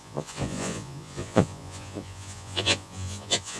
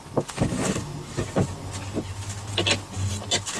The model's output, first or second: first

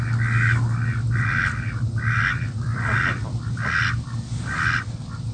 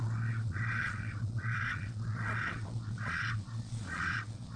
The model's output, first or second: second